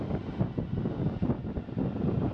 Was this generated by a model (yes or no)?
no